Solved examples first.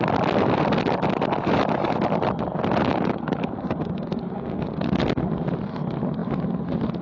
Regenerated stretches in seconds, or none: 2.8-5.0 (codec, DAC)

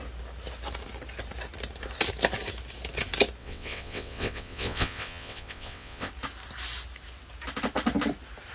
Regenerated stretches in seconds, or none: 3.4-6.1 (vocoder, WaveNeXt)

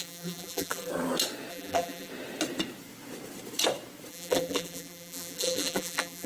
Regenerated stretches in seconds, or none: 0.0-0.9 (vocoder, BigVGAN v2); 1.5-2.1; 4.1-6.3

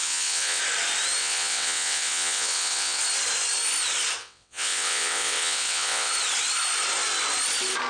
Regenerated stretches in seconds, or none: 0.0-0.6 (vocoder, WaveNeXt); 1.2-3.0; 4.2-6.1

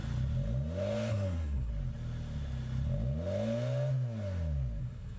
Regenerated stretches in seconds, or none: 1.1-1.7 (codec, SNAC); 4.8-5.2

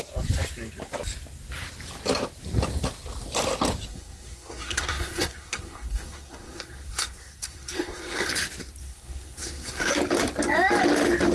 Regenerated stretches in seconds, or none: 3.9-8.3 (codec, SNAC); 8.8-9.9